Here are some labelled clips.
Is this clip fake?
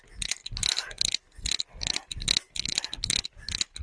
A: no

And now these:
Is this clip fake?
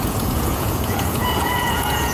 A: yes